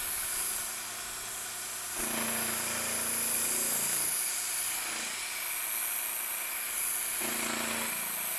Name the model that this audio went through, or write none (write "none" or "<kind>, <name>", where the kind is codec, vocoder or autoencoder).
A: none